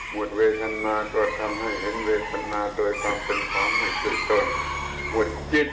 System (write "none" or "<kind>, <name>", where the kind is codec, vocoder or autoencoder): none